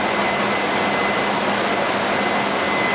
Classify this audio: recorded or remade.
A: recorded